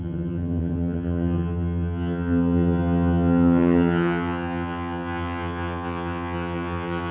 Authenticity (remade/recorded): remade